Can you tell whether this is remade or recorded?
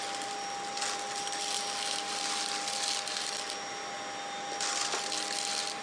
recorded